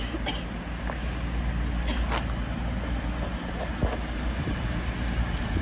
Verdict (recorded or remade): recorded